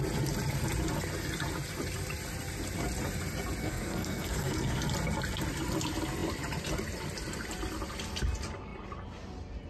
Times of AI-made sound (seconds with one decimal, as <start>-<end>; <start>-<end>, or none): 3.6-4.8